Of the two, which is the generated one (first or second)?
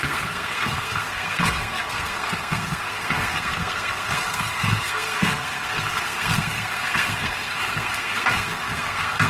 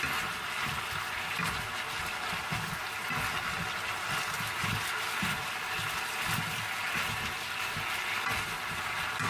first